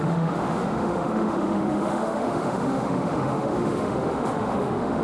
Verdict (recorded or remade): remade